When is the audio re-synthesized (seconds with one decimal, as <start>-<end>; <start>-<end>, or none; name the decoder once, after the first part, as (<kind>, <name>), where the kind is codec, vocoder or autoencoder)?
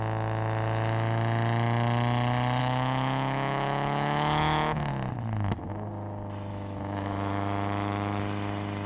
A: 2.6-4.9 (autoencoder, DAC-VAE); 6.5-8.2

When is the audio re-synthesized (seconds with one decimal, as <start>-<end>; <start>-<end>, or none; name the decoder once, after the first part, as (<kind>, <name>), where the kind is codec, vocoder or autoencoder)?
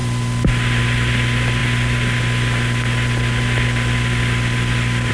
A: none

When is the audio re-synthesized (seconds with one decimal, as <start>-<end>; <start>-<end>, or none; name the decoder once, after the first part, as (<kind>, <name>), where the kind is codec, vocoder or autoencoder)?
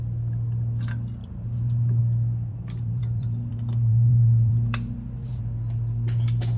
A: 1.2-2.0 (vocoder, BigVGAN v2); 2.5-5.4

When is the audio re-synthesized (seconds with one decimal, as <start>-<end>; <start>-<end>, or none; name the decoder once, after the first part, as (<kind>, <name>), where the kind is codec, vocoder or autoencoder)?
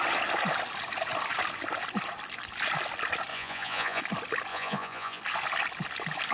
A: 3.3-4.0 (vocoder, Vocos); 4.5-5.2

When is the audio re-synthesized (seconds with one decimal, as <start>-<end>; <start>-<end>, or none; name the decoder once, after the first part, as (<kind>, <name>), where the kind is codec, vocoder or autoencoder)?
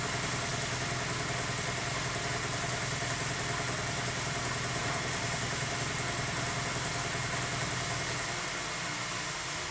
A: 4.7-5.9 (vocoder, BigVGAN v2)